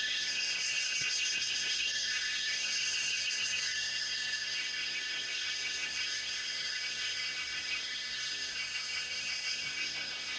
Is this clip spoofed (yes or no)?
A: yes